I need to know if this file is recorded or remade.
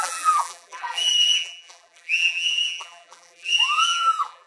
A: remade